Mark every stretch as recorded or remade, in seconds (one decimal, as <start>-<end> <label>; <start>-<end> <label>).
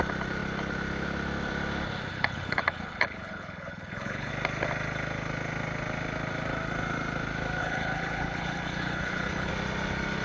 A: 0.0-2.1 recorded; 2.1-4.3 remade; 4.3-7.6 recorded; 7.6-9.5 remade; 9.5-10.2 recorded